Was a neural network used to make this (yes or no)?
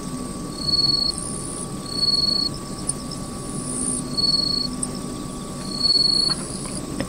no